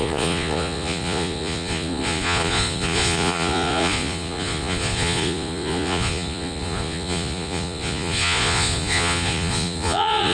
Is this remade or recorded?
remade